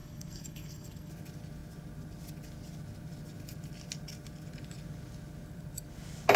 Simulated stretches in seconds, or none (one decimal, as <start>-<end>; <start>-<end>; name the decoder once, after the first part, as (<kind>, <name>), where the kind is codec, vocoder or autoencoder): 0.0-1.1 (codec, SNAC)

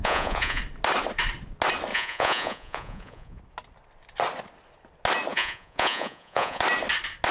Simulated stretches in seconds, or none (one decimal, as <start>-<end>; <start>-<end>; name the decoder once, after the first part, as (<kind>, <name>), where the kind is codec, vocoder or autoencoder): 0.0-0.6 (vocoder, Vocos); 1.9-3.4; 5.3-6.6